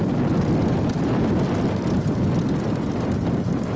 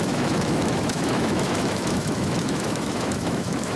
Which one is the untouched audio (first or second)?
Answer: first